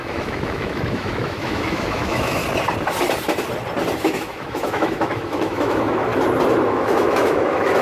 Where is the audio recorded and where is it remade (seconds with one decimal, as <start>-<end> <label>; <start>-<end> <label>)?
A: 0.0-2.4 remade; 2.4-4.0 recorded; 4.0-6.1 remade; 6.1-6.7 recorded; 6.7-7.8 remade